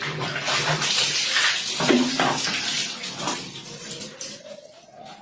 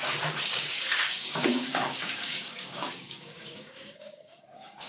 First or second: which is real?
first